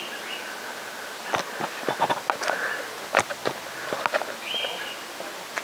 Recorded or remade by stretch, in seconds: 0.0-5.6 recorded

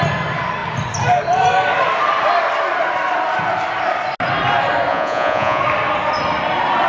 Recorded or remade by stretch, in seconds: 0.0-4.9 recorded; 4.9-5.6 remade; 5.6-6.9 recorded

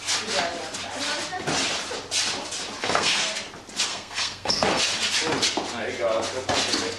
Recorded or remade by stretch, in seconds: 0.0-2.8 recorded; 2.8-3.3 remade; 3.3-3.9 recorded; 3.9-4.8 remade; 4.8-7.0 recorded

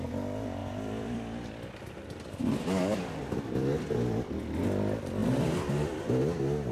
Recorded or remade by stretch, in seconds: 0.0-0.6 recorded; 0.6-3.8 remade; 3.8-5.2 recorded; 5.2-6.0 remade; 6.0-6.7 recorded